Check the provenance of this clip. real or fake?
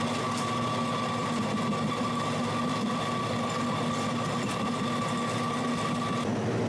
real